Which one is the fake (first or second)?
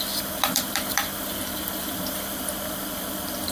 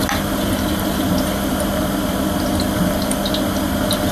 first